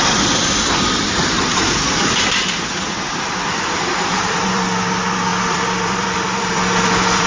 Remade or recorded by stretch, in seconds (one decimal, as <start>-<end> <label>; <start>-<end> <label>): 0.0-7.3 remade